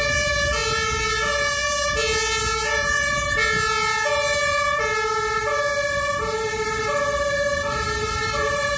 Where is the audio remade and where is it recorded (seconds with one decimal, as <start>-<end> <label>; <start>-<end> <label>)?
0.0-8.8 recorded